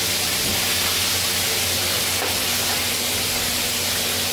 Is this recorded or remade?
recorded